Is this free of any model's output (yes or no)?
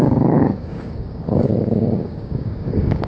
no